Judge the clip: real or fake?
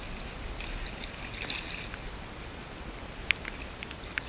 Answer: real